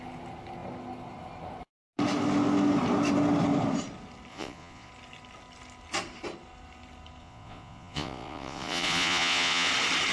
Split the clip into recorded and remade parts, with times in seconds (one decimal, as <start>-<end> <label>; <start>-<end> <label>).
0.0-4.3 recorded; 4.3-4.9 remade; 4.9-7.2 recorded; 7.2-9.7 remade; 9.7-10.1 recorded